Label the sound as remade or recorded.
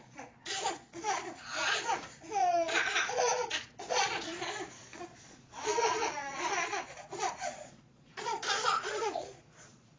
remade